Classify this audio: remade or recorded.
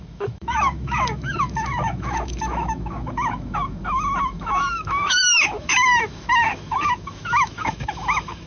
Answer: remade